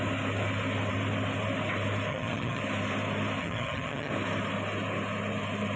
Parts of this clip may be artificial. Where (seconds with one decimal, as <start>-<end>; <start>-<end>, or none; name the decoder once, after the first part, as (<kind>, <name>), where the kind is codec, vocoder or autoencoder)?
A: 2.1-2.6 (vocoder, HiFi-GAN); 3.4-4.1